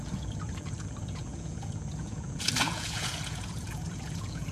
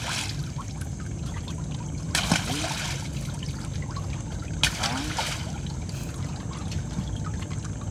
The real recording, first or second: second